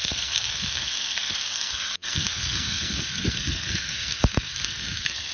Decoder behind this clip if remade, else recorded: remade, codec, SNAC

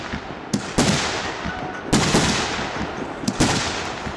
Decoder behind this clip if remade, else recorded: recorded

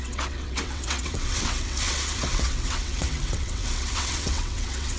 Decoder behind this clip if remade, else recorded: remade, vocoder, WaveNeXt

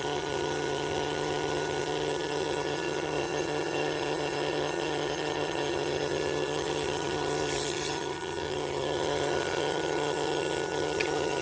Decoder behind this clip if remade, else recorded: remade, vocoder, HiFi-GAN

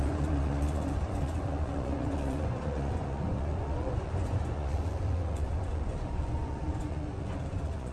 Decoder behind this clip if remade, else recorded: remade, vocoder, Vocos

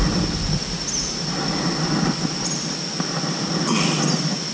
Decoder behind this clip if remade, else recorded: recorded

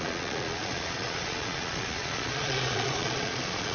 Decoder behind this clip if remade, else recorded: remade, vocoder, Vocos